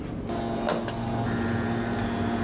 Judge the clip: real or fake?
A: real